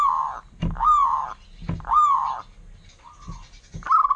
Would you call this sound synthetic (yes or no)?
no